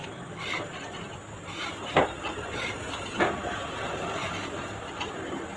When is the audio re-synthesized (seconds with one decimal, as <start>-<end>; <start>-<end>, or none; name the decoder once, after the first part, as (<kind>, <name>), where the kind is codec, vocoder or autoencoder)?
none